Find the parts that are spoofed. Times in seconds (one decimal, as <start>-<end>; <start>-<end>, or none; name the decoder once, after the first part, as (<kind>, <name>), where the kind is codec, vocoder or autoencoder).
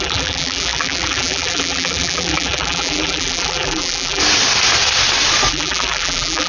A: 0.0-4.2 (vocoder, BigVGAN v2); 5.5-6.5